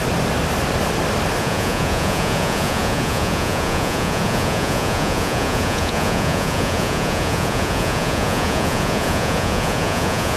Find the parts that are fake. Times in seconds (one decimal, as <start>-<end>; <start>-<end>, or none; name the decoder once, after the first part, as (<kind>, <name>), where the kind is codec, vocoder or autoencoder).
1.4-10.4 (vocoder, Vocos)